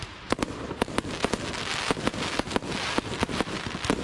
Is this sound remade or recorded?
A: recorded